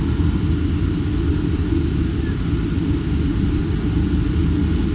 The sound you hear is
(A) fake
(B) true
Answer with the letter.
B